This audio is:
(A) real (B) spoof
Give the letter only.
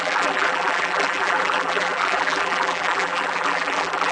B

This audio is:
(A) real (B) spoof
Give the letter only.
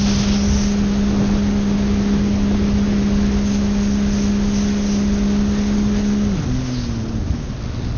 A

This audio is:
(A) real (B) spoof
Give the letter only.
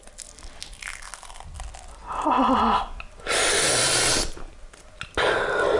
A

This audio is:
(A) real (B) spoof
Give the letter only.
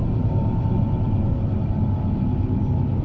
A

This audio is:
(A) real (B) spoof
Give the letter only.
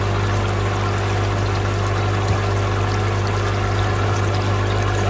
A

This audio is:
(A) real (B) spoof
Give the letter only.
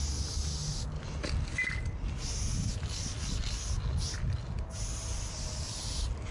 A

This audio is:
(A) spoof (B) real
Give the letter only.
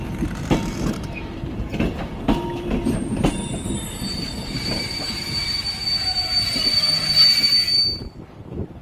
A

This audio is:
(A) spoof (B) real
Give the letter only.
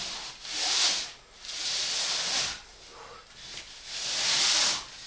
B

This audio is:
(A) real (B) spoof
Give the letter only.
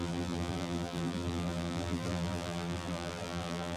B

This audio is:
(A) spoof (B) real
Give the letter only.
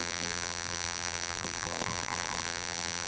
A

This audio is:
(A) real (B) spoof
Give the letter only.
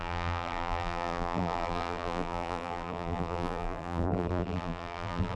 B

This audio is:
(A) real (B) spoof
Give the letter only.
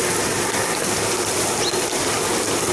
A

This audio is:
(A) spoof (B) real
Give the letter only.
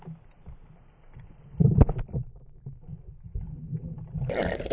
B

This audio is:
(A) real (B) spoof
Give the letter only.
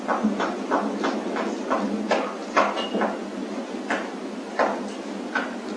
A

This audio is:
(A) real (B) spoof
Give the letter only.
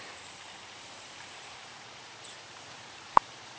B